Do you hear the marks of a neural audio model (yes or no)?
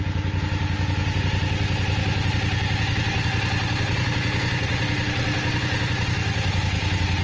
no